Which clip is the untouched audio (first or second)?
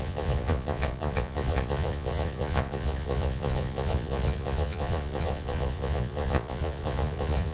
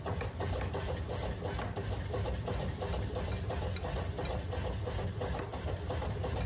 second